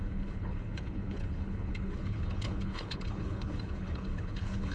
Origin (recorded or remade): remade